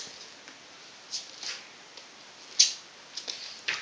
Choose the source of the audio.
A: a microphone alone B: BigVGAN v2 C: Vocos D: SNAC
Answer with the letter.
A